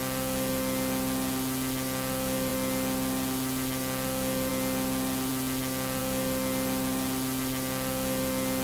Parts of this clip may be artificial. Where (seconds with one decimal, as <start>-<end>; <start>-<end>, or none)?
none